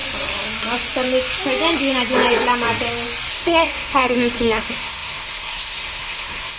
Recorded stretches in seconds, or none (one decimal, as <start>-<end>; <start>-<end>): 0.0-3.3